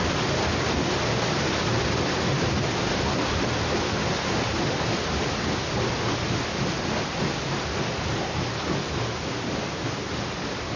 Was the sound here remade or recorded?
recorded